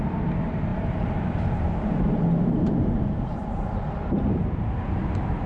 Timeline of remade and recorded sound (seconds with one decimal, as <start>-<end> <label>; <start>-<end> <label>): 0.0-0.7 recorded; 0.7-3.9 remade; 3.9-5.5 recorded